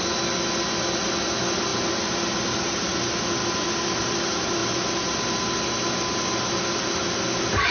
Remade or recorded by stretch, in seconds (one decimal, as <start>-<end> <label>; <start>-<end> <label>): 0.0-7.7 recorded